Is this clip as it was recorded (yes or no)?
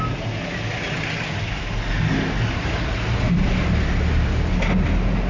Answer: yes